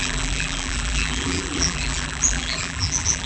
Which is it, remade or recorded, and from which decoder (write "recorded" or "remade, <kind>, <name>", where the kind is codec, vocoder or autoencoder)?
remade, vocoder, BigVGAN v2